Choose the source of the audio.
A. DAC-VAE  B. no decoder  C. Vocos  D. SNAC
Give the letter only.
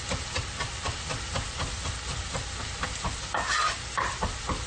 B